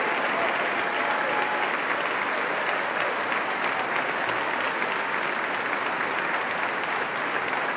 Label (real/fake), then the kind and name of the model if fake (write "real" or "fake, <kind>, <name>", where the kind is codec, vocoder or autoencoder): real